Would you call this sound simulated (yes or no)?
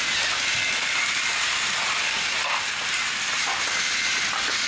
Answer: no